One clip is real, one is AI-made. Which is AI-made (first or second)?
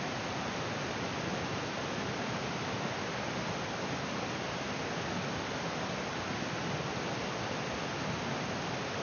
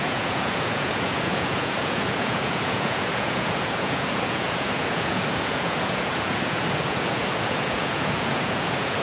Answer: second